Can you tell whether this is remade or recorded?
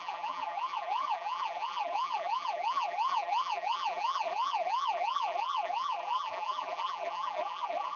remade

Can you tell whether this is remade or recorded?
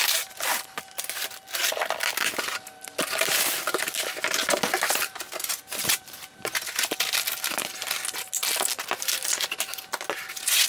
recorded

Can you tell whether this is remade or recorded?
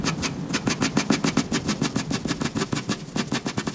remade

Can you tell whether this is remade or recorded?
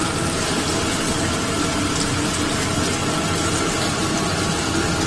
recorded